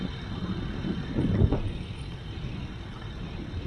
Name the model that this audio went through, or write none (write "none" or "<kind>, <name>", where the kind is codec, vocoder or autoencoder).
none